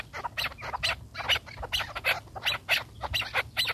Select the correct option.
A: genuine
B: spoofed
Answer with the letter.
A